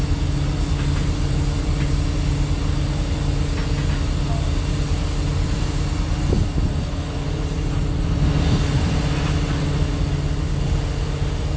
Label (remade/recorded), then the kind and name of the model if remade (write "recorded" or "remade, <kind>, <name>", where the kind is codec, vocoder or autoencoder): recorded